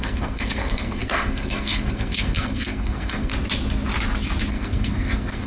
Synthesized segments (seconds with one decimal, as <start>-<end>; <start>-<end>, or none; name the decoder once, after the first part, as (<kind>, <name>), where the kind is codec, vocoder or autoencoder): 0.0-3.3 (codec, SNAC); 4.5-5.5